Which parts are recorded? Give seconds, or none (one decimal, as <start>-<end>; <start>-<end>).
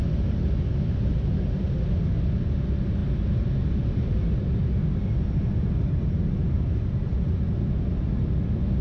0.0-8.8